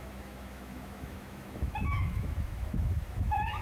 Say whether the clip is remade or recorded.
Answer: remade